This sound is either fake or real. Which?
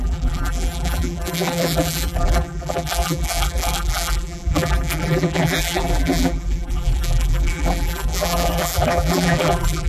fake